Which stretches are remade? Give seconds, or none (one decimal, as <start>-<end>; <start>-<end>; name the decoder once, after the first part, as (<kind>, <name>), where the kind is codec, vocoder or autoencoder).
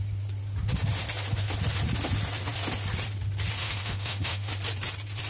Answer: 3.6-4.5 (autoencoder, DAC-VAE)